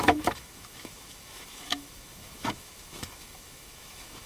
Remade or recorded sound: remade